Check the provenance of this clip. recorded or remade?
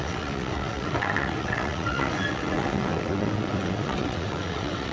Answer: remade